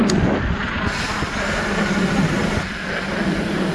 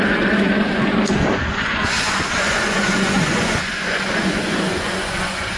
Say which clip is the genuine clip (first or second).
first